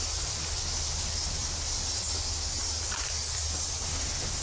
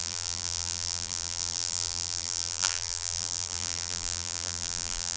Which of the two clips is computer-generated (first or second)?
second